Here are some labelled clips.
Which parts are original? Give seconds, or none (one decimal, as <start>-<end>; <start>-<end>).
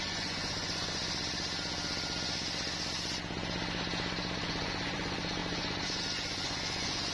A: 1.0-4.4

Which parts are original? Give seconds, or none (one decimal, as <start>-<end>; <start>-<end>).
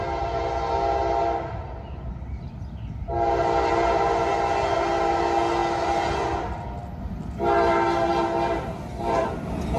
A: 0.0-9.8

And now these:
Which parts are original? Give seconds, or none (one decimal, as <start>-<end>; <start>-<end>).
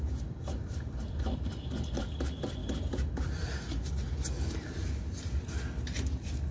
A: 0.0-6.5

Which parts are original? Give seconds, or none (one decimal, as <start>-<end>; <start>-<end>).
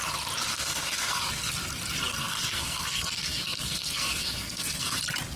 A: 0.0-0.5; 1.5-2.1; 5.0-5.4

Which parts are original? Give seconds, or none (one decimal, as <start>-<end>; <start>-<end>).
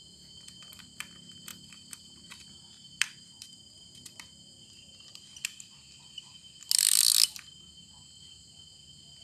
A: 0.0-9.2